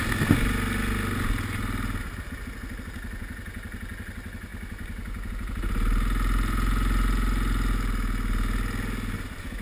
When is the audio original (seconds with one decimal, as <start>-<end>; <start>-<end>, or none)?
0.0-9.6